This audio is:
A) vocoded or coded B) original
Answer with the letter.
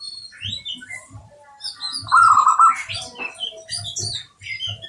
B